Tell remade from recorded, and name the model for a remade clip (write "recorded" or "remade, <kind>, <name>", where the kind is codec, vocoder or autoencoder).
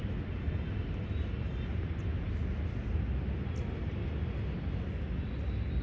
recorded